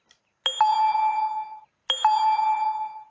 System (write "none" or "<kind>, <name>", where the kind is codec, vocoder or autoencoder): none